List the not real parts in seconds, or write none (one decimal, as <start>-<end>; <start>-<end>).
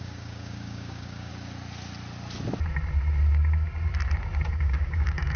0.0-1.3; 4.5-5.4